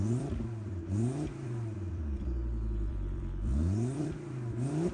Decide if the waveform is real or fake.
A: fake